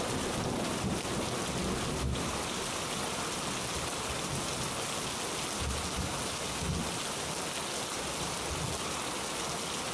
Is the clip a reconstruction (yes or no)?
no